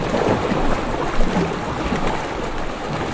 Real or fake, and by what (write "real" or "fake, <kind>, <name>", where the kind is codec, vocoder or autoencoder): real